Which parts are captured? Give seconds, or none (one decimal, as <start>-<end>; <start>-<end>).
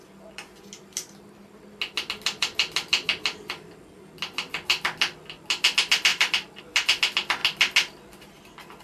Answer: 0.0-8.8